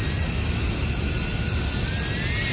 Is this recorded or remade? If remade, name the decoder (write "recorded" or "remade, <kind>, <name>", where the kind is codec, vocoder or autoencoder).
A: recorded